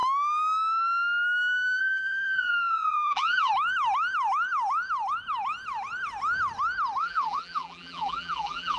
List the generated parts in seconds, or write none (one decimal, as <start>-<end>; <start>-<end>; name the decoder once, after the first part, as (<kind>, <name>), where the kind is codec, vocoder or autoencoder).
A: 1.8-3.5 (vocoder, BigVGAN v2); 7.0-8.8